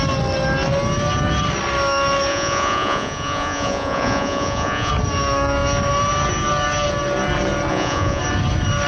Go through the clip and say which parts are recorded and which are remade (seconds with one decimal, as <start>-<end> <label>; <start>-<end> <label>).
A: 0.0-2.3 recorded; 2.3-4.9 remade; 4.9-7.7 recorded; 7.7-8.2 remade; 8.2-8.9 recorded

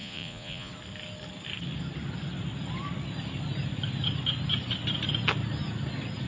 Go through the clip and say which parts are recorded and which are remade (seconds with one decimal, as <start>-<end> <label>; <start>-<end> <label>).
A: 0.0-0.7 remade; 0.7-6.3 recorded

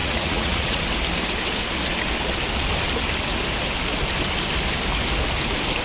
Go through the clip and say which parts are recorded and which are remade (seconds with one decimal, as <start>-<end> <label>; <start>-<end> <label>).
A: 0.0-0.8 remade; 0.8-5.8 recorded

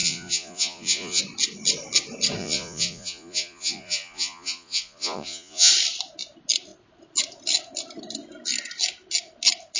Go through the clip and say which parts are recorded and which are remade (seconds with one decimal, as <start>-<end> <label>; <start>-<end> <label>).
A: 0.0-1.2 remade; 1.2-2.4 recorded; 2.4-5.7 remade; 5.7-9.8 recorded

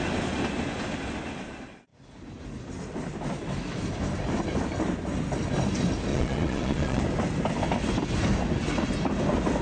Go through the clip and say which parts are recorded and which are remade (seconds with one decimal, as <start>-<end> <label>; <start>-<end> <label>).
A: 0.0-6.1 recorded; 6.1-7.0 remade; 7.0-9.6 recorded